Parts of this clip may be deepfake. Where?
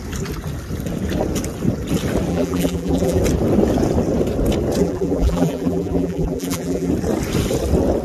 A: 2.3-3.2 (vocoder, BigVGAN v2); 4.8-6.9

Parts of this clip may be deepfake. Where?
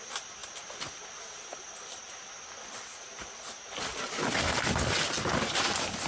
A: none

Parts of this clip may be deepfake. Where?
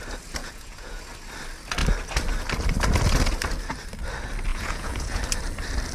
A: 0.4-1.0 (vocoder, Vocos); 4.5-5.2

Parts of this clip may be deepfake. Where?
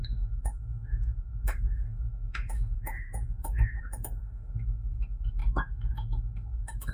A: 0.0-6.9 (autoencoder, DAC-VAE)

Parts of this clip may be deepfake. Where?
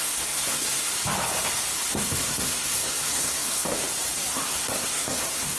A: 0.0-0.9 (codec, SNAC); 1.9-3.7; 4.3-5.6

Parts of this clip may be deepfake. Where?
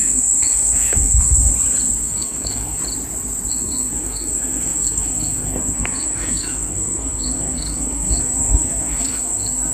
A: 0.0-1.5 (codec, SNAC); 2.0-2.8; 3.5-9.7